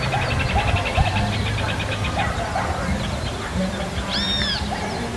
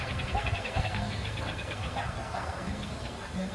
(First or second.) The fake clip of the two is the second